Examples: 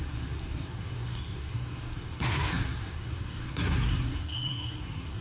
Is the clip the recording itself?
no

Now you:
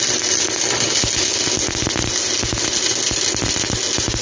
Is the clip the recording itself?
yes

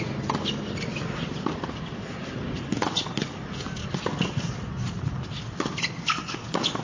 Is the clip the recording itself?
yes